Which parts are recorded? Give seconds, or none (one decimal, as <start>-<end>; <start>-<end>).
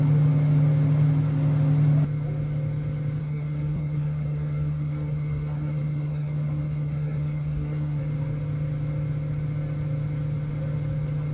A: 0.0-3.2; 8.0-11.3